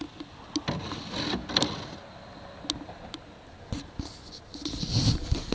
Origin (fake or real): real